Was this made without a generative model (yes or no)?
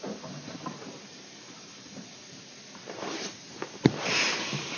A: no